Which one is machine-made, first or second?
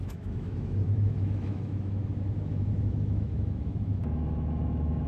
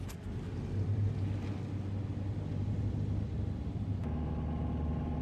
first